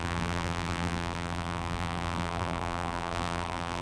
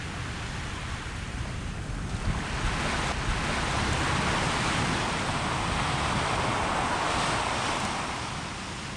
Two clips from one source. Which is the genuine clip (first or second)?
second